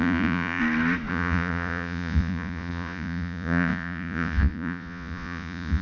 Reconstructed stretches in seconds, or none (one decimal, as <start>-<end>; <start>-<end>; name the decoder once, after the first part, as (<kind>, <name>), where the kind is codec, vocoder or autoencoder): 0.0-0.6 (vocoder, Vocos); 1.1-5.8